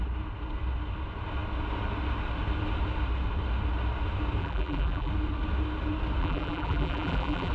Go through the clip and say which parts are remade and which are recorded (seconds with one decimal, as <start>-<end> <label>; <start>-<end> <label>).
0.0-4.4 recorded; 4.4-5.1 remade; 5.1-6.2 recorded; 6.2-7.5 remade